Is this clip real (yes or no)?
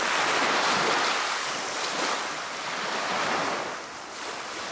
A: yes